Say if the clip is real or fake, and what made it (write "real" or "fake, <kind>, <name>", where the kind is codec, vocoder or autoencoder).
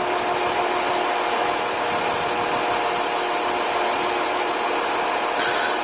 real